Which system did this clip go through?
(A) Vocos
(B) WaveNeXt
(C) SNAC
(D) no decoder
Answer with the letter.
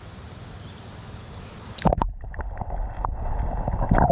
D